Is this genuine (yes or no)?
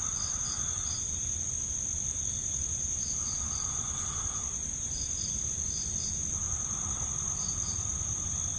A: yes